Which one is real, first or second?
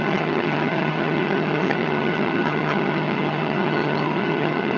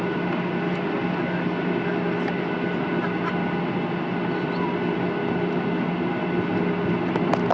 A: second